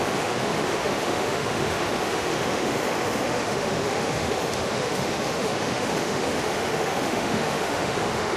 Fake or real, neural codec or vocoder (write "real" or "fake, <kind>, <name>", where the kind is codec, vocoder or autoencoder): fake, autoencoder, DAC-VAE